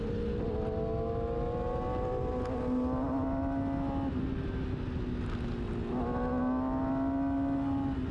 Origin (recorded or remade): recorded